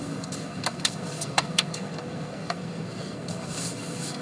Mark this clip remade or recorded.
remade